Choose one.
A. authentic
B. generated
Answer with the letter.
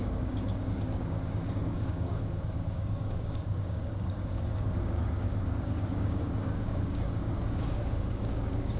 B